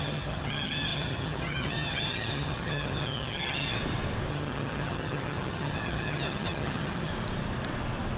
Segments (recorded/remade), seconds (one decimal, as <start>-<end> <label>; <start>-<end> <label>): 0.0-3.8 remade; 3.8-4.3 recorded; 4.3-7.1 remade; 7.1-8.2 recorded